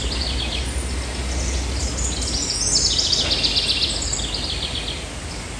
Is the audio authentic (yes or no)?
yes